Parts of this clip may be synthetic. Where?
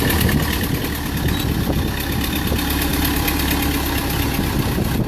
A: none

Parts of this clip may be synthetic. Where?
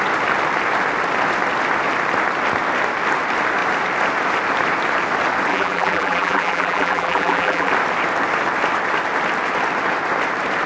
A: 5.5-7.7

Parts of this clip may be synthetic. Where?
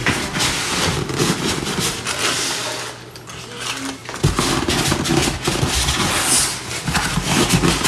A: 0.0-2.2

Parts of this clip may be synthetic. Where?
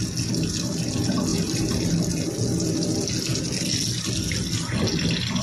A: 1.3-1.9